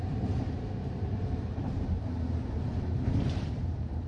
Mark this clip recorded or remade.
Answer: remade